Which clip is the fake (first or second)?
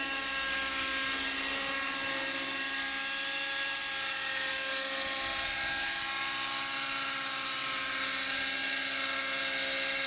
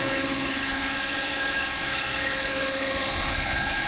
second